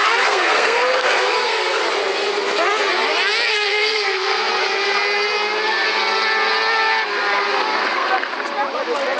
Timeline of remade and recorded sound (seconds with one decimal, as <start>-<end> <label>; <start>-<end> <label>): 0.0-1.8 remade; 1.8-3.5 recorded; 3.5-4.5 remade; 4.5-7.8 recorded; 7.8-8.3 remade; 8.3-9.2 recorded